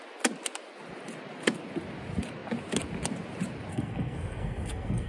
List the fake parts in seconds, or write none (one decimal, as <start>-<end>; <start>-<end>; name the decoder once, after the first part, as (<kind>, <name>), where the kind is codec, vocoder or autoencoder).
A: 3.7-5.1 (codec, SNAC)